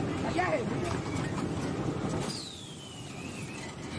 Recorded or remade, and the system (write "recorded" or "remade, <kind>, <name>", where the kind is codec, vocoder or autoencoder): recorded